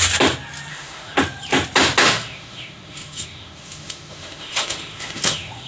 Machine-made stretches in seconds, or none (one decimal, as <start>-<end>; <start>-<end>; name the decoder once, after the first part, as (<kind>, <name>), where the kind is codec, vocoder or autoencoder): 0.7-1.2 (autoencoder, DAC-VAE); 2.0-5.7